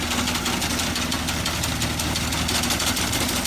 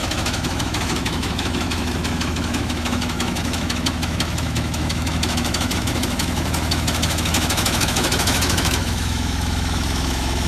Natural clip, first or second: first